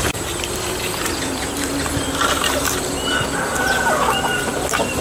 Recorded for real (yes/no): no